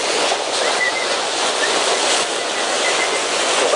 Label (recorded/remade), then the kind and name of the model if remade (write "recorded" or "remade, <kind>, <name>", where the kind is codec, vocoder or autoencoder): remade, vocoder, Vocos